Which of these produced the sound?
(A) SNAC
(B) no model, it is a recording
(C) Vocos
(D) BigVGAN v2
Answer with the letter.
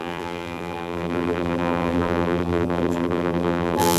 D